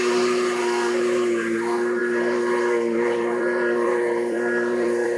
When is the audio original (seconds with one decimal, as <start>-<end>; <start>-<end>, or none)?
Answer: 0.0-2.0